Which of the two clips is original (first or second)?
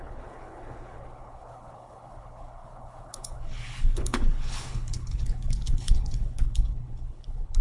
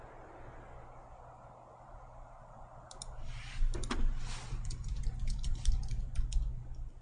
second